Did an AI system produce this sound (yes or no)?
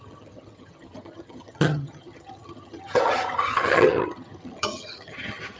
yes